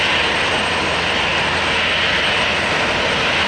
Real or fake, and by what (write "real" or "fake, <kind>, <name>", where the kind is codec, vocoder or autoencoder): real